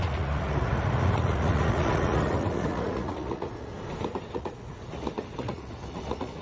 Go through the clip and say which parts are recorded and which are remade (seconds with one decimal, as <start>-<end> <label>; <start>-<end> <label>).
0.0-3.7 remade; 3.7-4.3 recorded; 4.3-6.4 remade